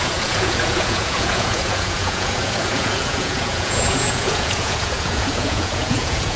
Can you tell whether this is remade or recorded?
remade